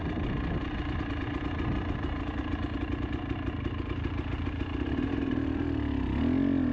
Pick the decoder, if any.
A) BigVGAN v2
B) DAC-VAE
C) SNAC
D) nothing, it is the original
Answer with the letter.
D